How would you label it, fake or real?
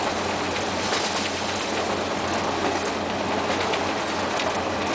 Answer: real